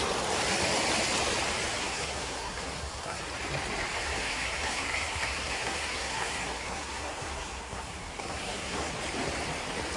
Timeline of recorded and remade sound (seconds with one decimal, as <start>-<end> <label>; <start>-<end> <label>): 0.0-1.8 recorded; 1.8-3.2 remade; 3.2-3.9 recorded; 3.9-8.9 remade; 8.9-10.0 recorded